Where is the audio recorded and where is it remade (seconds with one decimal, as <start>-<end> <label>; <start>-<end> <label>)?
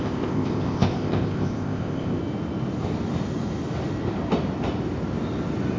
0.0-2.2 remade; 2.2-5.8 recorded